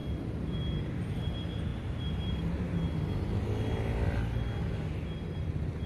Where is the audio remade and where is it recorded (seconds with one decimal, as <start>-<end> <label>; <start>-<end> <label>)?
0.0-5.9 recorded